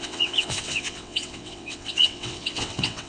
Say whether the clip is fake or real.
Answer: fake